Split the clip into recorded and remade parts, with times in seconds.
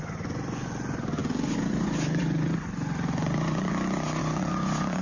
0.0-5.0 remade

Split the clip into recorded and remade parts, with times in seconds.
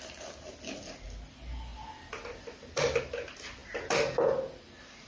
0.0-1.7 remade; 1.7-2.3 recorded; 2.3-5.1 remade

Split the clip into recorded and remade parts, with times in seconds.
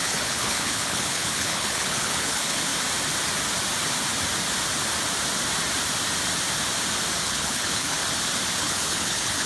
0.0-2.7 remade; 2.7-7.2 recorded; 7.2-8.0 remade; 8.0-8.6 recorded; 8.6-9.5 remade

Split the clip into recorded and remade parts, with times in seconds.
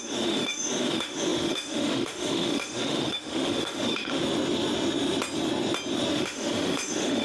0.0-4.2 remade; 4.2-6.1 recorded; 6.1-7.2 remade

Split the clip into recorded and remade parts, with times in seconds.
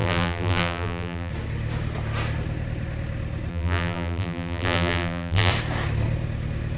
0.0-1.3 remade; 1.3-3.5 recorded; 3.5-5.5 remade; 5.5-6.8 recorded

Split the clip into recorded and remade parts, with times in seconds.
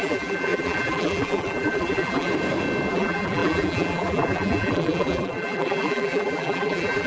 0.0-2.3 remade; 2.3-2.9 recorded; 2.9-7.1 remade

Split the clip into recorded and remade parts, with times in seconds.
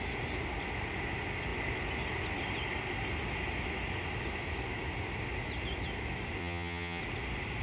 0.0-6.4 recorded; 6.4-7.0 remade; 7.0-7.6 recorded